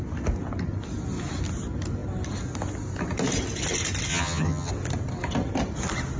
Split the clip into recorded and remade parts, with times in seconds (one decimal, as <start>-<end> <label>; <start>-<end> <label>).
0.0-4.1 recorded; 4.1-4.7 remade; 4.7-6.2 recorded